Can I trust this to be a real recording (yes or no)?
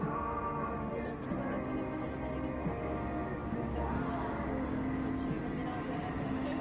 yes